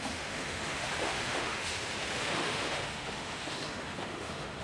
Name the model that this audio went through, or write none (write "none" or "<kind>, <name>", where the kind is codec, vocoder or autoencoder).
autoencoder, DAC-VAE